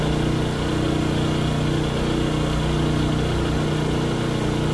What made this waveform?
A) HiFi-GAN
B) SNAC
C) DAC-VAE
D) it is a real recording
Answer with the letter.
D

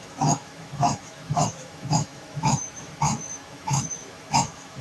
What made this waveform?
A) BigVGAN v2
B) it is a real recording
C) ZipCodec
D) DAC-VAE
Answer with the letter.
D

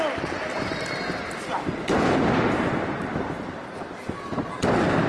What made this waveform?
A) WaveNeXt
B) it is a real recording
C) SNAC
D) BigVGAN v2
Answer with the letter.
D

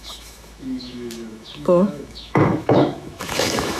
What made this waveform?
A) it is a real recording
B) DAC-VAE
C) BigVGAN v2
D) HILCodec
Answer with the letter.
B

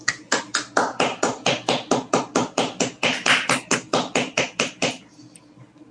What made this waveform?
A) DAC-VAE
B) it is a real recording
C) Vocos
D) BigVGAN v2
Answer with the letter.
D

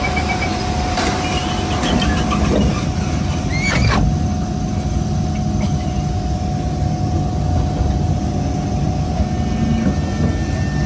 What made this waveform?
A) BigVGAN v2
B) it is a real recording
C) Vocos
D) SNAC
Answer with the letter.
B